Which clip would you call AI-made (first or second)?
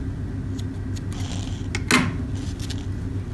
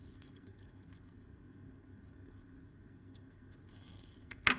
second